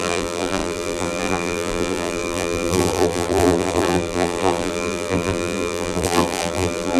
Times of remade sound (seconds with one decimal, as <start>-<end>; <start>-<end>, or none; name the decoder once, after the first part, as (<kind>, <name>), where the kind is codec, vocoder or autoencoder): 0.0-7.0 (vocoder, BigVGAN v2)